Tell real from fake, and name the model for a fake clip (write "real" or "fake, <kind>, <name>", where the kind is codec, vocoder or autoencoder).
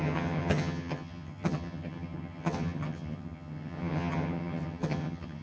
fake, vocoder, HiFi-GAN